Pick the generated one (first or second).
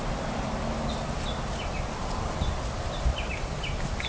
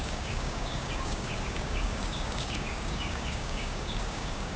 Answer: second